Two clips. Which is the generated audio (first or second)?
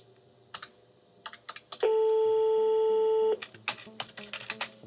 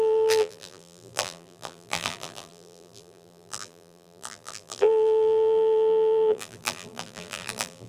second